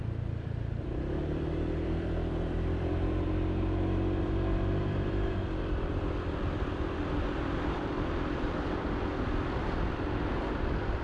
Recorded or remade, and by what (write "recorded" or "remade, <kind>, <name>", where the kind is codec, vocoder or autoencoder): remade, vocoder, BigVGAN v2